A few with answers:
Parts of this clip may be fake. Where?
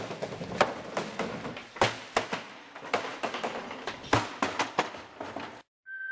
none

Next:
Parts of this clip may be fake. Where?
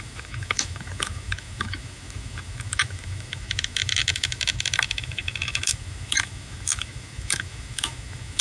0.0-8.4 (autoencoder, DAC-VAE)